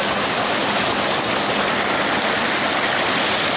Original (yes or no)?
yes